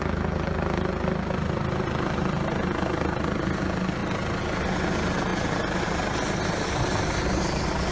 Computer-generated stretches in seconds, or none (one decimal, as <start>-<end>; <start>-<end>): none